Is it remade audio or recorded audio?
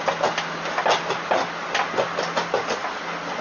recorded